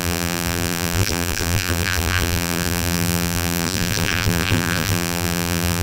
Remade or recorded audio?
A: remade